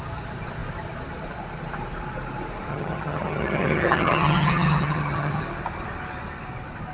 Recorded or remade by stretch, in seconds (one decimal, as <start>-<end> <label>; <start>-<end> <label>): 0.0-2.7 recorded; 2.7-5.4 remade; 5.4-6.9 recorded

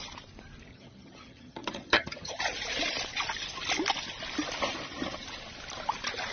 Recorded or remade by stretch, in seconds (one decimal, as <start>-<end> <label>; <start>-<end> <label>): 0.0-0.7 recorded; 0.7-2.4 remade; 2.4-6.3 recorded

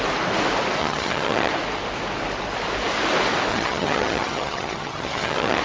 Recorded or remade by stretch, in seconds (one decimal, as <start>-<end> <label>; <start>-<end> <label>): 0.0-0.8 recorded; 0.8-1.5 remade; 1.5-3.5 recorded; 3.5-5.6 remade